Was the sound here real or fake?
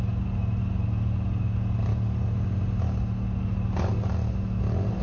real